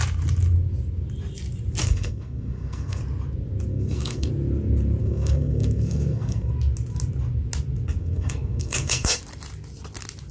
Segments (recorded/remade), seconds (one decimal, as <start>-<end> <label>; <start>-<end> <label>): 0.0-1.8 recorded; 1.8-3.0 remade; 3.0-3.7 recorded; 3.7-4.3 remade; 4.3-5.0 recorded; 5.0-6.5 remade; 6.5-8.0 recorded; 8.0-9.2 remade; 9.2-10.3 recorded